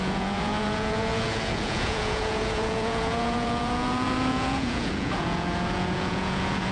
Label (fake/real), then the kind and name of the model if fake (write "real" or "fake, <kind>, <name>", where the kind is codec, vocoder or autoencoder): fake, vocoder, Vocos